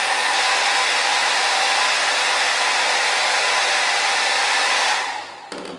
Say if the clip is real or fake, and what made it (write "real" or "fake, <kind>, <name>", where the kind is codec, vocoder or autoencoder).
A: real